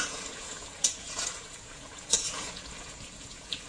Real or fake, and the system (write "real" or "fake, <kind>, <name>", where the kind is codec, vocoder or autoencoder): fake, vocoder, Vocos